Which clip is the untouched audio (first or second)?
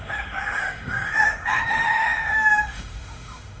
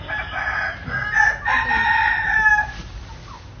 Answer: second